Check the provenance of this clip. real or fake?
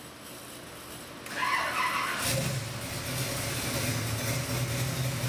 real